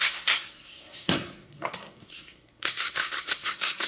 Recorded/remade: remade